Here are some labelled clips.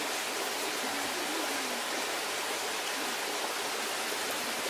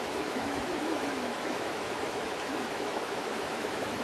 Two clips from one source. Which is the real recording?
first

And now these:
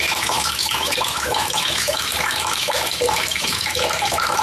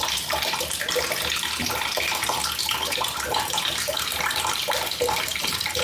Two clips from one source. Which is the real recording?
second